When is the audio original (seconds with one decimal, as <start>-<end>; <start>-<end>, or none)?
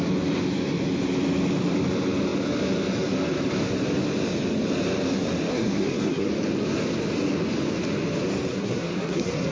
0.0-5.5; 6.3-8.5